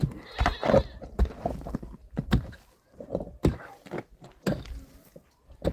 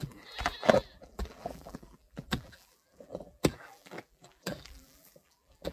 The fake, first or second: second